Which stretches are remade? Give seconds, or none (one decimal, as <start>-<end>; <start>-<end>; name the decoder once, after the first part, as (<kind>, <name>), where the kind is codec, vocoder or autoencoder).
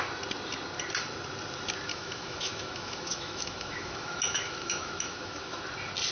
1.9-5.6 (autoencoder, DAC-VAE)